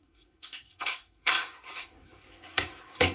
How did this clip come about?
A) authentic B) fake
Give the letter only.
B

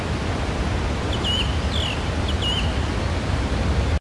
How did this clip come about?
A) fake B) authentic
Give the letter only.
B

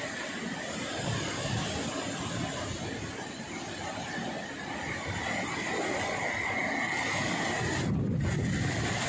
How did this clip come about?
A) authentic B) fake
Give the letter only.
A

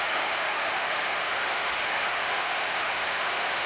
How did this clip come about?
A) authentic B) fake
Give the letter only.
B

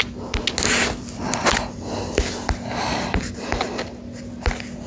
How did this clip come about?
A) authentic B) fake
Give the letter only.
A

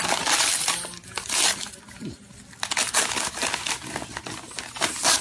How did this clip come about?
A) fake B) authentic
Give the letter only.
B